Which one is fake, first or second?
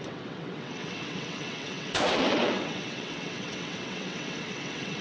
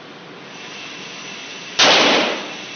first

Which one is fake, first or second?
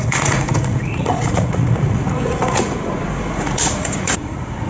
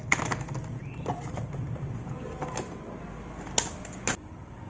first